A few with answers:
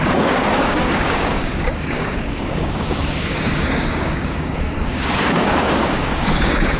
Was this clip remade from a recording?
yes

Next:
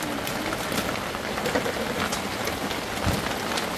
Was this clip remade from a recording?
no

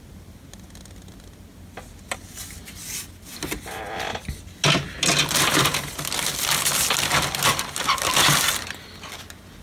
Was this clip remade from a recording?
no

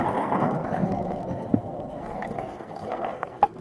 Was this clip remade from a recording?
yes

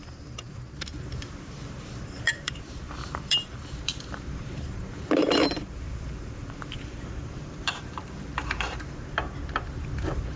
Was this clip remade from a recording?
yes